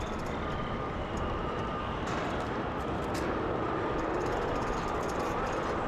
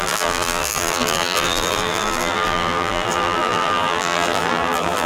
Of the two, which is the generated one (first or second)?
second